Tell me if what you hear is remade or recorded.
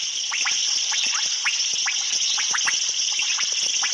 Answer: recorded